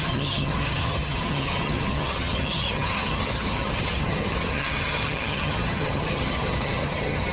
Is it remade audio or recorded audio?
remade